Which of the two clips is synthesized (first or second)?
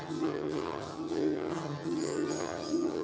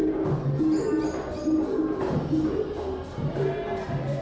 first